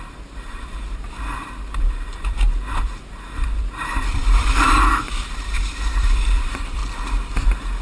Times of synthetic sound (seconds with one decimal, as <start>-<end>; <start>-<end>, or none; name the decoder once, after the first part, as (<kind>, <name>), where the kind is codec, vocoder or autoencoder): 0.0-6.8 (vocoder, BigVGAN v2)